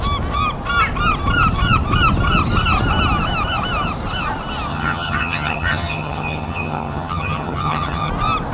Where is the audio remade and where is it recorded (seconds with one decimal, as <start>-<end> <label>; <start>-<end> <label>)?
0.0-4.7 recorded; 4.7-8.1 remade; 8.1-8.5 recorded